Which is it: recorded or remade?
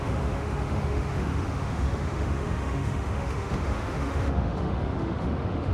remade